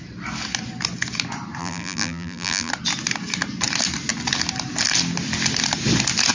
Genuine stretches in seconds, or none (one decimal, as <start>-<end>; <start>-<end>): 0.0-1.6; 2.7-6.3

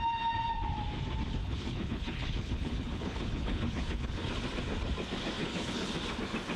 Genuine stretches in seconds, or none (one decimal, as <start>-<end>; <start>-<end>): 0.0-1.4; 4.3-5.4; 5.9-6.6

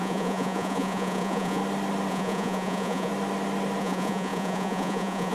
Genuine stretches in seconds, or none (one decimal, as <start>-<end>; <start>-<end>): 1.6-2.1; 3.1-3.8